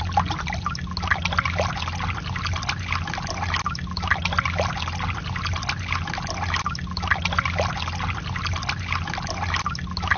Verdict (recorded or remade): recorded